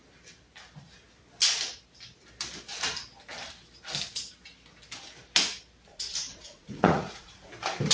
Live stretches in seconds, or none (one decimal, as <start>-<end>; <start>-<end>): 0.0-5.9; 7.5-7.9